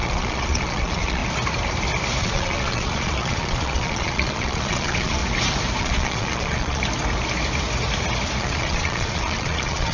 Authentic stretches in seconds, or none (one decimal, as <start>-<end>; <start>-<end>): 1.2-2.2; 5.2-5.8; 6.8-8.4